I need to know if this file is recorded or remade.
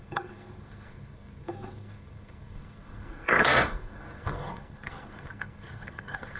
remade